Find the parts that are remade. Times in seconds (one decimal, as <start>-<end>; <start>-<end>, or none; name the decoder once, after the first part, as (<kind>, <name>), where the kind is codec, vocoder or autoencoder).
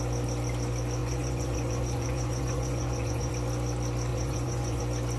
1.0-3.3 (vocoder, Vocos); 4.1-4.8